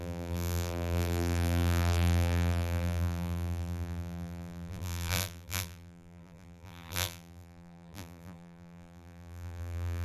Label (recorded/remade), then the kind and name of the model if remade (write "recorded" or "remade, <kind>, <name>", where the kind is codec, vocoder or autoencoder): remade, vocoder, BigVGAN v2